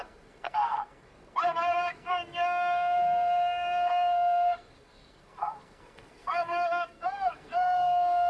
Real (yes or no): no